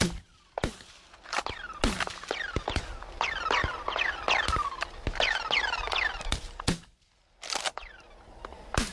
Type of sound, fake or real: real